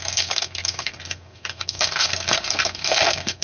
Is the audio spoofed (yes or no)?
yes